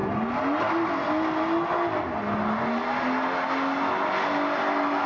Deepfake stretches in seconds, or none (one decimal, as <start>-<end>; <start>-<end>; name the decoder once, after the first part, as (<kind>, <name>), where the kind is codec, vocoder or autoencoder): none